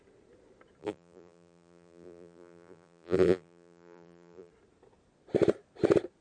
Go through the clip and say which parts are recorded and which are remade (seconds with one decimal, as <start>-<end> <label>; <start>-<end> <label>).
0.0-0.8 recorded; 0.8-4.5 remade; 4.5-6.2 recorded